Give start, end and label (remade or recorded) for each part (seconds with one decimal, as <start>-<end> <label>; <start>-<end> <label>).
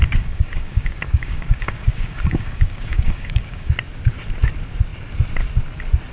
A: 0.0-3.7 remade; 3.7-6.1 recorded